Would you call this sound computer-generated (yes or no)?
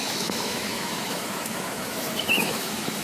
yes